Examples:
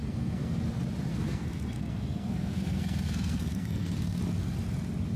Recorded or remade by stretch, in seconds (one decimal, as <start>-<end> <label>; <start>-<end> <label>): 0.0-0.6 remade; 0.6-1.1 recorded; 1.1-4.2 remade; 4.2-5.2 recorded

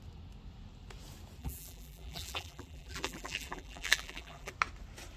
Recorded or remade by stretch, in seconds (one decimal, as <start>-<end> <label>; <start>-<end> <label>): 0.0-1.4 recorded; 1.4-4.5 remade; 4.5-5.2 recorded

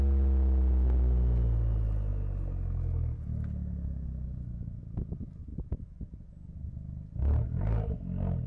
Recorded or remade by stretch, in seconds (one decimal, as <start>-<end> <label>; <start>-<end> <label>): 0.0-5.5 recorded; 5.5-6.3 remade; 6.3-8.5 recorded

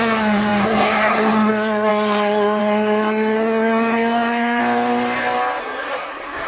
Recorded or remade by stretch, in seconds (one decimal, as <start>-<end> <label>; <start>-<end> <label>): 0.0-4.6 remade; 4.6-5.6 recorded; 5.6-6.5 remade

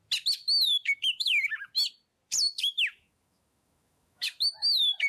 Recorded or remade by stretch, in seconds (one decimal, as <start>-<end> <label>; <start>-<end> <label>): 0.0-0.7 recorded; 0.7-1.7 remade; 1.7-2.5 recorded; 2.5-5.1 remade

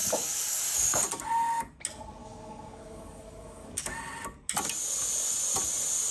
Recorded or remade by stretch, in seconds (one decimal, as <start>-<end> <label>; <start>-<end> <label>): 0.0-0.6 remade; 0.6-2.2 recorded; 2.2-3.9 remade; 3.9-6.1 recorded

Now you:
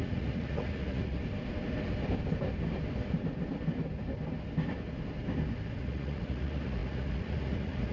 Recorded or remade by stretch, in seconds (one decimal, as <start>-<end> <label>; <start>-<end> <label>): 0.0-1.2 remade; 1.2-5.8 recorded; 5.8-7.9 remade